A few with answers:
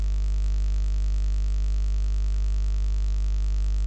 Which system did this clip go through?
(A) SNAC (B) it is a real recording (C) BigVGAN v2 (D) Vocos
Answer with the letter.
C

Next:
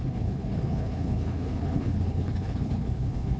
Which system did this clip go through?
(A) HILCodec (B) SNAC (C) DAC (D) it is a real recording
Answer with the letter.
A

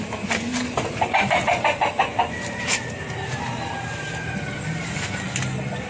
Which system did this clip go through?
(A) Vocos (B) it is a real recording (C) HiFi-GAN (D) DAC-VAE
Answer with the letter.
B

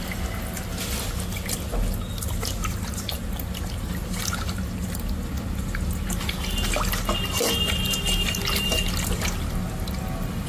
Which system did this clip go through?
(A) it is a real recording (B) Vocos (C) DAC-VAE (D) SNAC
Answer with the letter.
A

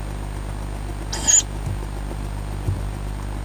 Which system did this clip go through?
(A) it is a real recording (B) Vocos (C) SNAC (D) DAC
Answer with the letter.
A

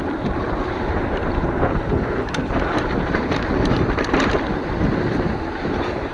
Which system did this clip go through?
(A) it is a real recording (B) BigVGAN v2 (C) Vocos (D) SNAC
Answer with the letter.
B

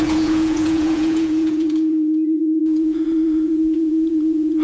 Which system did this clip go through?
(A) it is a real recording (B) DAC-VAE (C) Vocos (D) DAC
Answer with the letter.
C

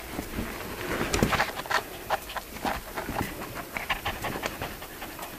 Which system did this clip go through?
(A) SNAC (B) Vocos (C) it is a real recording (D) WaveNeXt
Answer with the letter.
C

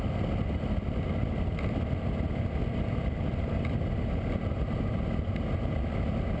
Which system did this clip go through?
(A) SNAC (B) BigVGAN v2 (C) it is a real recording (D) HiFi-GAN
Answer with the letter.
C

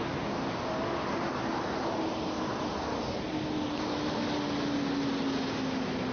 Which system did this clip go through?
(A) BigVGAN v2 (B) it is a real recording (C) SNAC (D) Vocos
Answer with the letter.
B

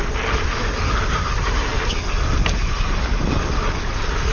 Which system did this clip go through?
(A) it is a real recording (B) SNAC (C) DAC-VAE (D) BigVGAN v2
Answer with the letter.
A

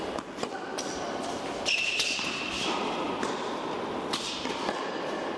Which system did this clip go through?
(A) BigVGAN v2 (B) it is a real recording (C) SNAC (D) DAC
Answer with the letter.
B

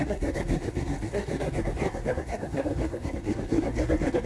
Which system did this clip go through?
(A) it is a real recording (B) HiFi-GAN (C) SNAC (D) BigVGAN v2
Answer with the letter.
C